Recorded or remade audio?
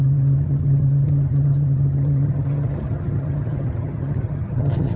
remade